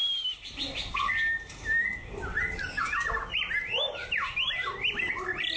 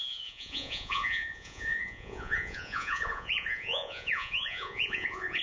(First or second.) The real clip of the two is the first